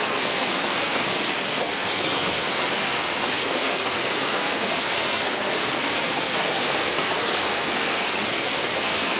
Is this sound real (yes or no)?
no